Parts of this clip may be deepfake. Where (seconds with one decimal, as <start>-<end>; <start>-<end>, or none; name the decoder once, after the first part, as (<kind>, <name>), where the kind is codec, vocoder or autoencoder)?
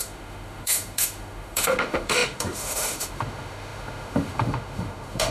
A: 0.0-5.3 (autoencoder, DAC-VAE)